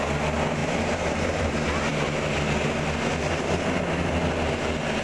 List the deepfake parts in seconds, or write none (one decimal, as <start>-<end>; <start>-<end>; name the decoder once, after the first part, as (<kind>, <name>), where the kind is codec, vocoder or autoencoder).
0.6-1.5 (vocoder, BigVGAN v2)

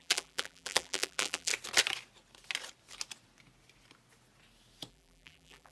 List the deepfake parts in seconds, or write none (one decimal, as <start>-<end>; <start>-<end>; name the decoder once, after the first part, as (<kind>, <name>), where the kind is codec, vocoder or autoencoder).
0.0-1.5 (vocoder, BigVGAN v2); 4.9-5.7

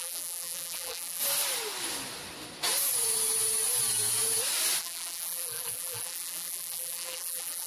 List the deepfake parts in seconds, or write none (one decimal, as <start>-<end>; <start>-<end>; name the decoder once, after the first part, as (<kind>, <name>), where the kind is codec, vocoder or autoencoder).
0.0-1.2 (vocoder, BigVGAN v2); 4.8-7.7

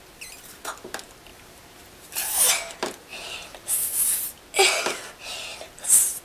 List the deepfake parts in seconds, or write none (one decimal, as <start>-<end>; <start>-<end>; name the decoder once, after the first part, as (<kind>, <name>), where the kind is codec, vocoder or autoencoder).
1.3-2.5 (vocoder, BigVGAN v2); 3.1-3.7; 5.5-6.2

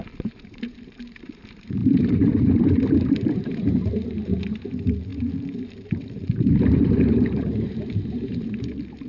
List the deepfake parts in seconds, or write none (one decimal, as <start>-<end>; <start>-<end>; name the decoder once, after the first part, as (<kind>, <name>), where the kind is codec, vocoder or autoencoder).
0.0-9.1 (vocoder, BigVGAN v2)

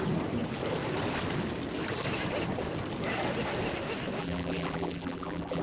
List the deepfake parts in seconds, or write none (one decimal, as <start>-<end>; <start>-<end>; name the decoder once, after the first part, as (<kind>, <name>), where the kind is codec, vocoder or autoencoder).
4.2-5.6 (vocoder, BigVGAN v2)

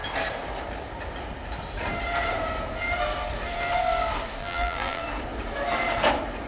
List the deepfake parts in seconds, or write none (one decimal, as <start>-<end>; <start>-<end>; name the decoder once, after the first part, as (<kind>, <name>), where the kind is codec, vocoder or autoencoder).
4.4-5.0 (vocoder, BigVGAN v2)